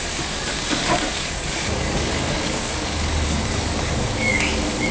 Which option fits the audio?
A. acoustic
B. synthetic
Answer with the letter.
B